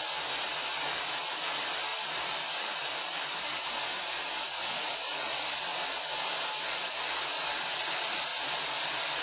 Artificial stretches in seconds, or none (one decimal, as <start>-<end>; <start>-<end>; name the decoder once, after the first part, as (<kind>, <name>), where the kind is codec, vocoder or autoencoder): 1.9-5.6 (vocoder, BigVGAN v2)